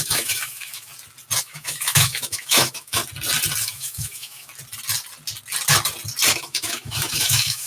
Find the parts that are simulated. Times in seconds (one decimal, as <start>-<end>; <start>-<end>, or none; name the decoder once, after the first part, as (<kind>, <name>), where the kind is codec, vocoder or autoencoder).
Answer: 0.0-0.9 (autoencoder, DAC-VAE); 1.4-3.0; 3.6-4.5; 6.3-7.7